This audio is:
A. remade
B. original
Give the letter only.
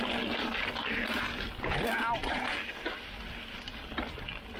B